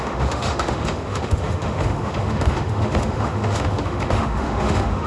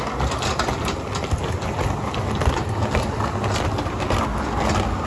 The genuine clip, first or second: second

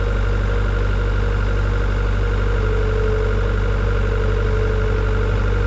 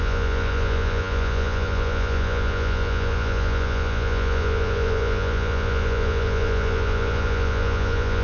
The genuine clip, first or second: first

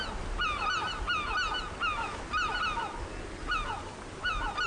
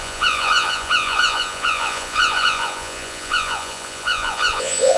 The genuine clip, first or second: first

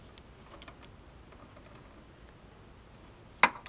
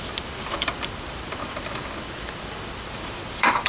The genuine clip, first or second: first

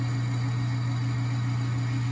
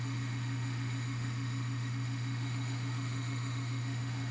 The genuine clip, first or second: first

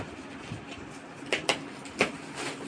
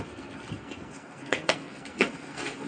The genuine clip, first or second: first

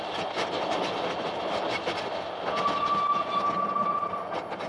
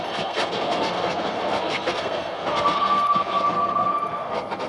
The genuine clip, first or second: first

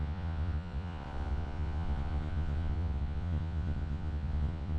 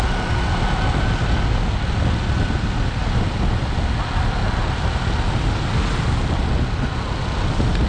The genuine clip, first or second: second